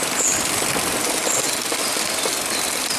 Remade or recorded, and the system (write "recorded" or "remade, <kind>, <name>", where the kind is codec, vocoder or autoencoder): recorded